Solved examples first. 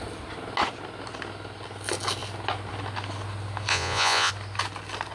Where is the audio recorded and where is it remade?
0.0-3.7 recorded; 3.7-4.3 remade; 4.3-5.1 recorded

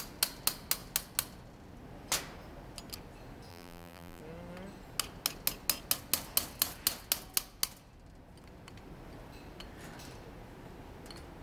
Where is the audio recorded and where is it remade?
0.0-3.5 recorded; 3.5-4.2 remade; 4.2-11.4 recorded

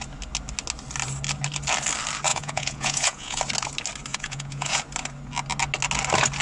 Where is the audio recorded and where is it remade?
0.0-2.3 recorded; 2.3-3.4 remade; 3.4-4.1 recorded; 4.1-4.8 remade; 4.8-6.4 recorded